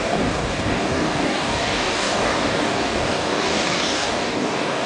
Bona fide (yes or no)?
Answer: no